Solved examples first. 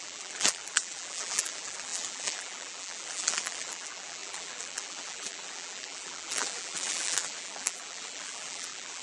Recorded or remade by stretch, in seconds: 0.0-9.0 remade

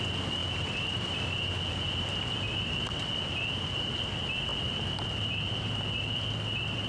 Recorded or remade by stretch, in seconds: 0.0-6.9 recorded

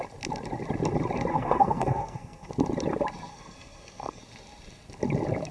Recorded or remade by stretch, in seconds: 0.0-1.3 recorded; 1.3-2.5 remade; 2.5-3.3 recorded; 3.3-4.2 remade; 4.2-5.5 recorded